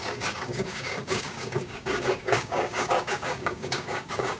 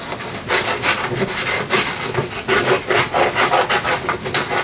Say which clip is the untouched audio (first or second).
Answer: second